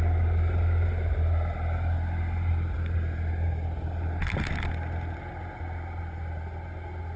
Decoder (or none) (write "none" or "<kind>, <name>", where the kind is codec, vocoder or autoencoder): none